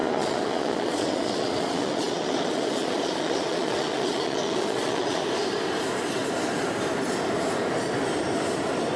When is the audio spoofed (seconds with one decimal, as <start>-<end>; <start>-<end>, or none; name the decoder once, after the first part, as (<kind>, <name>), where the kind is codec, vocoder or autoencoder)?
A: 0.0-5.2 (vocoder, Vocos)